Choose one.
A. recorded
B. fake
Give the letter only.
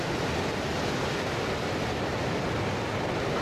A